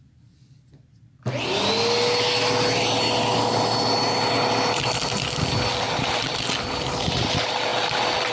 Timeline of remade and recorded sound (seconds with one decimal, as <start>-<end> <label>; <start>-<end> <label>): 0.0-8.3 recorded